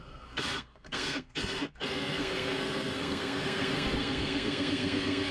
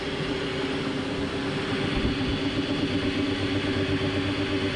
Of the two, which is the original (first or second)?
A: second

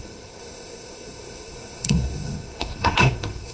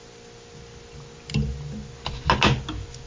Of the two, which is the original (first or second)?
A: second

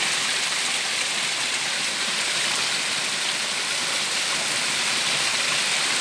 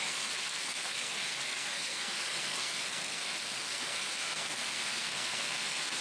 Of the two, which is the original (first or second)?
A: first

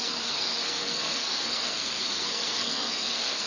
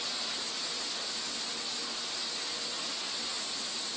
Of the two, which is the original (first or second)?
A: second